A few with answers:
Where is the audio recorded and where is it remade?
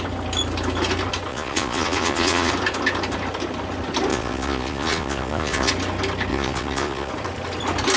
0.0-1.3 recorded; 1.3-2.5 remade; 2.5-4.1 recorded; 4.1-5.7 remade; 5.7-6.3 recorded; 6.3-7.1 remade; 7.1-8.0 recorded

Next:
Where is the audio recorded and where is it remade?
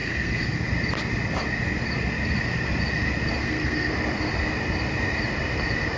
0.0-0.6 remade; 0.6-3.4 recorded; 3.4-3.9 remade; 3.9-6.0 recorded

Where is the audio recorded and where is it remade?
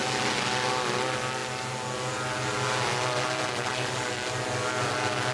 0.0-5.3 recorded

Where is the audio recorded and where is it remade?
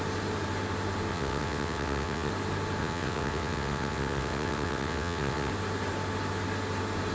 0.0-1.1 recorded; 1.1-2.3 remade; 2.3-2.8 recorded; 2.8-5.5 remade; 5.5-7.1 recorded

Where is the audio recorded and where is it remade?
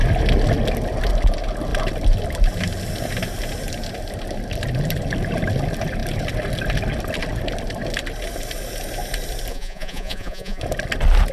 0.0-9.5 recorded; 9.5-10.6 remade; 10.6-11.3 recorded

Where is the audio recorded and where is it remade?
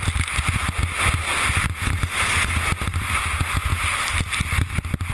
0.0-5.1 recorded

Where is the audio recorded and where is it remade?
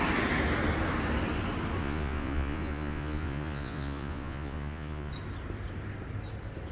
0.0-1.8 recorded; 1.8-5.1 remade; 5.1-6.7 recorded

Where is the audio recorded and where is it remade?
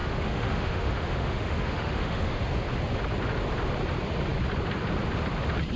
0.0-2.4 remade; 2.4-5.8 recorded